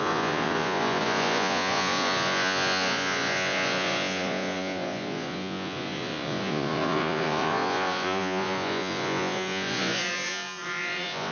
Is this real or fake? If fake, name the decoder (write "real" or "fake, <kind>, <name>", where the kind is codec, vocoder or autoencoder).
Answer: fake, vocoder, Vocos